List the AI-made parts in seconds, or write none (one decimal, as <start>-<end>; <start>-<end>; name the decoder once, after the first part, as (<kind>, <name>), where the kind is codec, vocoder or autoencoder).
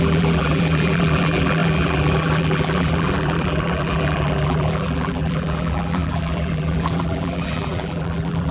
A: 0.0-8.5 (vocoder, BigVGAN v2)